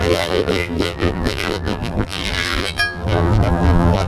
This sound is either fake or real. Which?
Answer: fake